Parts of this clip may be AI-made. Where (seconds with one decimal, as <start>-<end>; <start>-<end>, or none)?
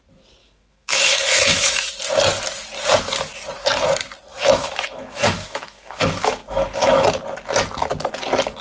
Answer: 0.4-1.9; 4.3-7.2